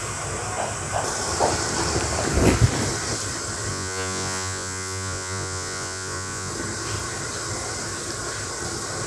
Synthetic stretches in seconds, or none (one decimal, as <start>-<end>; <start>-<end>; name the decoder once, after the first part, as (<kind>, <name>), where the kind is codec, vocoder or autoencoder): 3.7-6.5 (vocoder, Vocos)